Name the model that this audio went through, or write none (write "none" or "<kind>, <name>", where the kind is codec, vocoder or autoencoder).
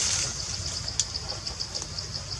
none